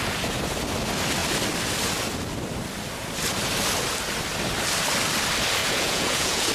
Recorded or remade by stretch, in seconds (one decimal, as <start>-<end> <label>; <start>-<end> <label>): 0.0-5.6 recorded; 5.6-6.5 remade